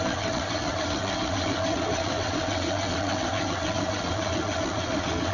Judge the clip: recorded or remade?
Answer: remade